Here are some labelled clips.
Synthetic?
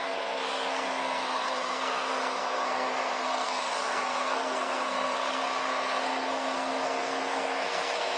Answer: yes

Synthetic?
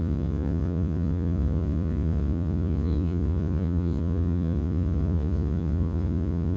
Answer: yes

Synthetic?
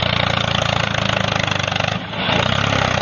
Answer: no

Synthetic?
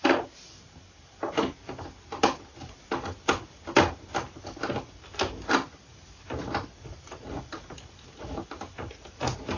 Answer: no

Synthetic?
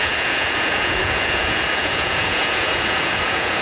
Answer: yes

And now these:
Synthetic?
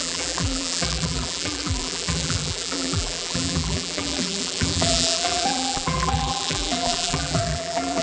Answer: yes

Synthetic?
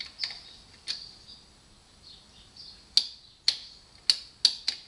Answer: no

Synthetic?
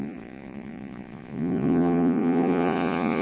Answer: yes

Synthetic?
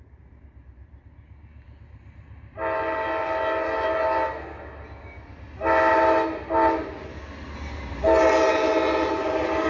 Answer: no